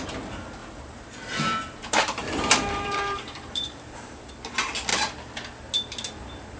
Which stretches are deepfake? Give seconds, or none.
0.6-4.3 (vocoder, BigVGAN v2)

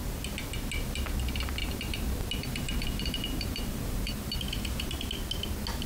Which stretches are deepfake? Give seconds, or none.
1.6-5.1 (vocoder, BigVGAN v2)

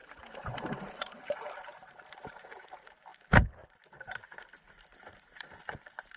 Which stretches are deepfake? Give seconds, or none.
0.9-3.1 (vocoder, BigVGAN v2); 4.7-6.2

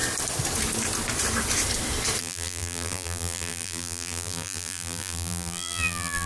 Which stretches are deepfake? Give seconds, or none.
2.2-6.3 (vocoder, BigVGAN v2)

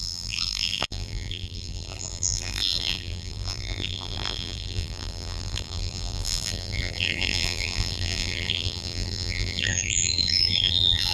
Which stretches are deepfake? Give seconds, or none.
0.0-11.1 (vocoder, BigVGAN v2)